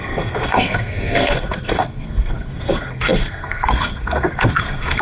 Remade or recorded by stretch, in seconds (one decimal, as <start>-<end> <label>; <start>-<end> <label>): 0.0-5.0 remade